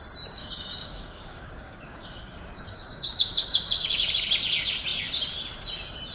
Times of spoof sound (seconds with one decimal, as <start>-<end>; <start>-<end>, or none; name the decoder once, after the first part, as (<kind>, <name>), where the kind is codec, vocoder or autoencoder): 0.4-4.1 (codec, DAC)